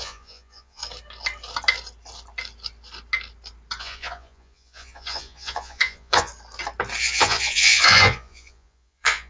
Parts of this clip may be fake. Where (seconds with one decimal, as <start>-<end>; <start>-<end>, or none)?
0.0-0.8; 3.8-6.3; 7.0-9.3

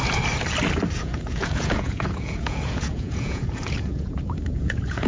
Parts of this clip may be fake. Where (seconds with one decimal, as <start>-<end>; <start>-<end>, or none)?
1.0-5.1

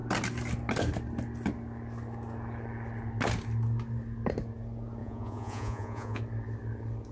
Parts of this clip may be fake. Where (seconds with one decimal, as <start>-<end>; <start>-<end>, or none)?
5.0-6.2

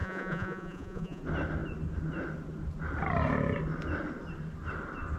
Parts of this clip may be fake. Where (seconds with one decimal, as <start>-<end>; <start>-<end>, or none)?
0.0-1.2